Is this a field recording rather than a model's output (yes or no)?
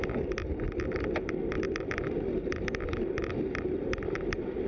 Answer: yes